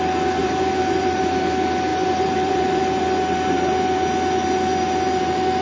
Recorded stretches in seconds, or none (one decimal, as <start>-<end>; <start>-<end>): 0.0-0.4; 1.2-1.9; 3.0-5.6